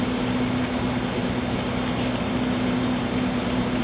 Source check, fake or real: fake